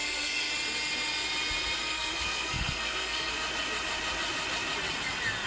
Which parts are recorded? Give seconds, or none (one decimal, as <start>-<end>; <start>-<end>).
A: 0.5-1.8; 3.3-5.5